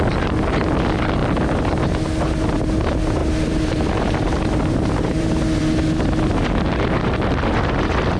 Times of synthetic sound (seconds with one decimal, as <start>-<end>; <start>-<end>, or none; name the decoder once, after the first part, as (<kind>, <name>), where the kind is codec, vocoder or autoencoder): 3.2-5.4 (vocoder, BigVGAN v2)